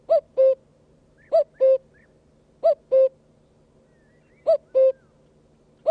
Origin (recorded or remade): recorded